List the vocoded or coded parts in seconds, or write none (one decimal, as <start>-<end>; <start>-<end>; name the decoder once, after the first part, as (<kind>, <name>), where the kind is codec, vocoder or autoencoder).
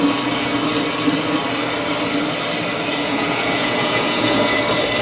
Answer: 3.0-4.6 (vocoder, Vocos)